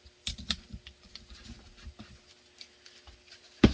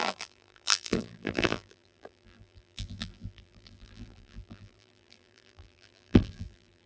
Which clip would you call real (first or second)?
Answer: first